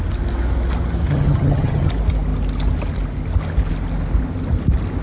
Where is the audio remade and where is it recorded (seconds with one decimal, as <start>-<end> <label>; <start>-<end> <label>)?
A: 0.0-1.1 recorded; 1.1-1.9 remade; 1.9-5.0 recorded